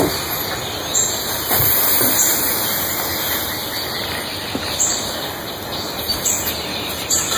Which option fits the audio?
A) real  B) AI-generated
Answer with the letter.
A